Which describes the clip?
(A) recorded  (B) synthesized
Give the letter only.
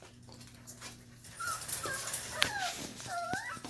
A